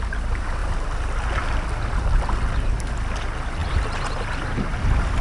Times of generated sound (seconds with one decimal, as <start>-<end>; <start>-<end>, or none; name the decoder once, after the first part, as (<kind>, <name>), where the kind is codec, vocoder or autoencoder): none